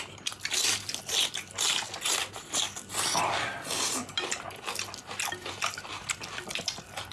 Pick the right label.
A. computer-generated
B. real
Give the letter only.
B